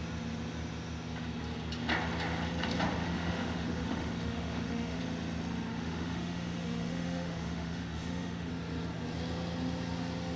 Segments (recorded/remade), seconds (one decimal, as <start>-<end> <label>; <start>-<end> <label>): 0.0-3.0 recorded; 3.0-5.0 remade; 5.0-5.7 recorded; 5.7-8.5 remade; 8.5-10.4 recorded